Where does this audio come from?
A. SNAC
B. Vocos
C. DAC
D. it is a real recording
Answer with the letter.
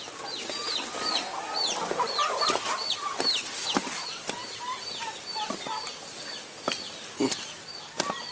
D